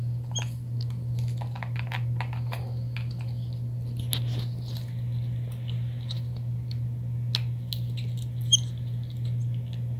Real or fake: real